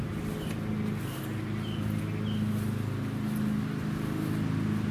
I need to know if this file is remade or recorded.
recorded